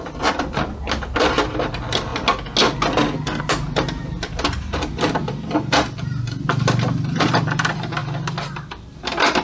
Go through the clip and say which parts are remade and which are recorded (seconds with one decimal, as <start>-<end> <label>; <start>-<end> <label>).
0.0-2.1 remade; 2.1-3.4 recorded; 3.4-8.0 remade; 8.0-8.7 recorded; 8.7-9.4 remade